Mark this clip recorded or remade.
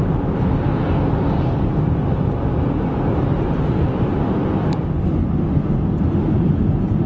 recorded